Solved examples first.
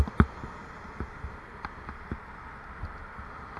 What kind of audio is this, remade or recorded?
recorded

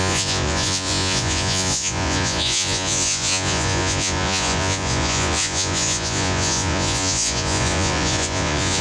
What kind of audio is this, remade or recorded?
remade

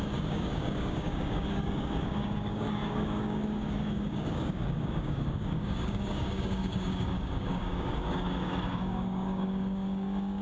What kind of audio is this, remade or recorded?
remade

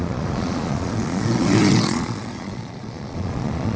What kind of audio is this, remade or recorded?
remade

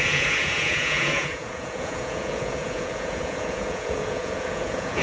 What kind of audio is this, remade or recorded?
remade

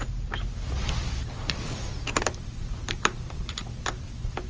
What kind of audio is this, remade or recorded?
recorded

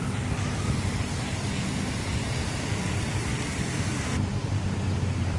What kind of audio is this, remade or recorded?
remade